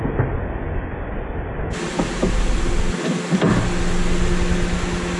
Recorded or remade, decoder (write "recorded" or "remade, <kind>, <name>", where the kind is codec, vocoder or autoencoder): recorded